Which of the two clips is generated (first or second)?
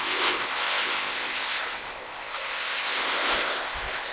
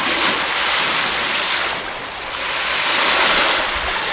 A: first